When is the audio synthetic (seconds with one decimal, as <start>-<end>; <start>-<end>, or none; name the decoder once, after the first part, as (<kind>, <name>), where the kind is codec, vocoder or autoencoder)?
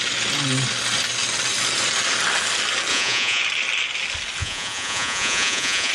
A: 2.9-3.4 (vocoder, Vocos); 4.4-5.9